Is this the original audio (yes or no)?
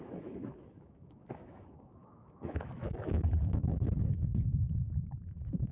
no